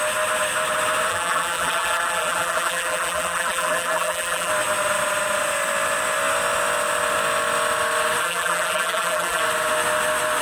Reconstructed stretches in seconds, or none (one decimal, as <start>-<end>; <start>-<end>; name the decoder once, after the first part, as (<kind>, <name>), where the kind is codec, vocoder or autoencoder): 1.1-4.5 (vocoder, BigVGAN v2); 8.2-9.4